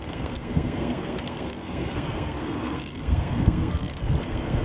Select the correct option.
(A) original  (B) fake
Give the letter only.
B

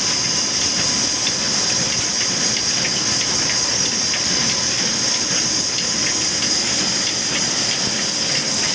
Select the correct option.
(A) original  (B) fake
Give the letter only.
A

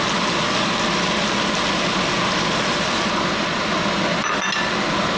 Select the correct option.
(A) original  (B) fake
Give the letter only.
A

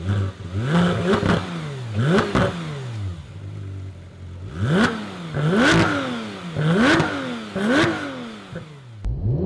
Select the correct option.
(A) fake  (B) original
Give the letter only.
B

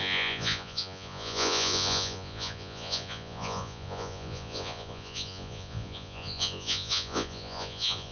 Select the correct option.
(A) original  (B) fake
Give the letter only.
B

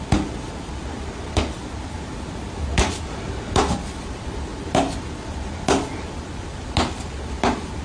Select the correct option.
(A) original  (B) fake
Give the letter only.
A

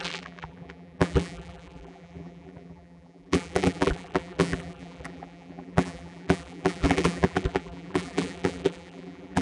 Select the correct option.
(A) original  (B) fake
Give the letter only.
B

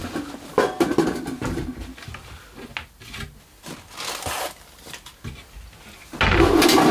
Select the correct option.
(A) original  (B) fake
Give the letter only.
A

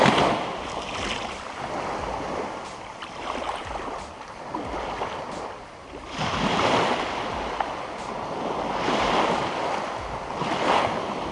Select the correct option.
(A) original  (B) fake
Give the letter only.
A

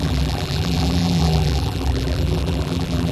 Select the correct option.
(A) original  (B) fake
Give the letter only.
B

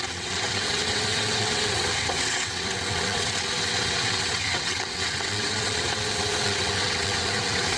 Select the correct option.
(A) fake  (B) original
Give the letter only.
A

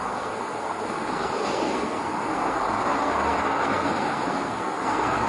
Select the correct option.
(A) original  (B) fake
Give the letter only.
B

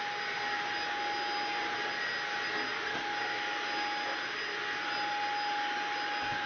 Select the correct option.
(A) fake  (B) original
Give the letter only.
B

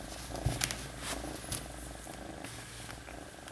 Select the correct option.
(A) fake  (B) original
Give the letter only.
B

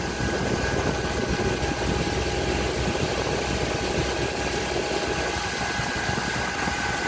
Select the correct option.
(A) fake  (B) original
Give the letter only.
B